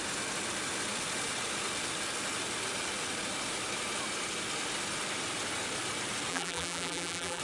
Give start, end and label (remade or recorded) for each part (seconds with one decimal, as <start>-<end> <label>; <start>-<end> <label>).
0.0-6.3 recorded; 6.3-7.4 remade